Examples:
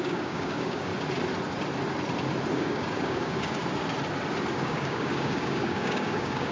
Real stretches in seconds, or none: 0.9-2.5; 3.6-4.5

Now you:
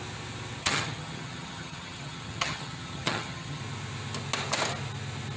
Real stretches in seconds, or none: 0.0-0.6; 3.6-5.4